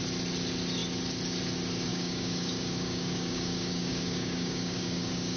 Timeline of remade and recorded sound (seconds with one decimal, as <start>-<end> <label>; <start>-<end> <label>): 0.0-1.9 recorded; 1.9-5.4 remade